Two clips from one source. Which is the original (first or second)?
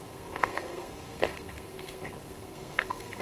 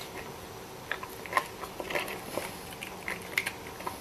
second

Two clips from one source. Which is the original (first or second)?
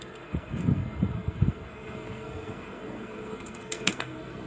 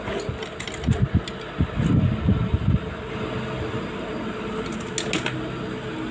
second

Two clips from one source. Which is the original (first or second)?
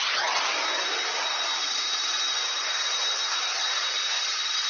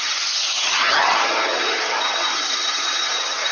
first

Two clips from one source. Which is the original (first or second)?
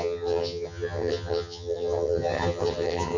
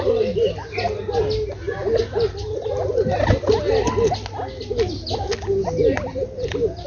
second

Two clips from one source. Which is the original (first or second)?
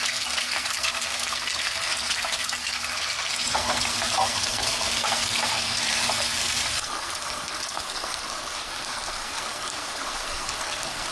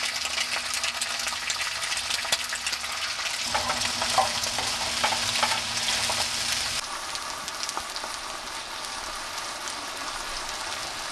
second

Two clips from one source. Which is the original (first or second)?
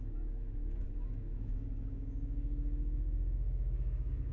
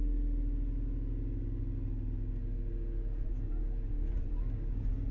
second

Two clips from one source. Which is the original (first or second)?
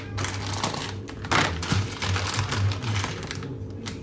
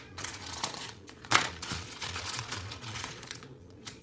first